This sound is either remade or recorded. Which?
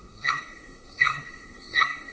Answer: remade